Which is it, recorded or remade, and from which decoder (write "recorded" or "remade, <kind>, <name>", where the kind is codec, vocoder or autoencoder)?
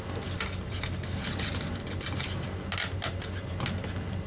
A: recorded